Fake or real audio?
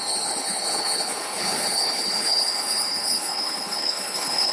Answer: fake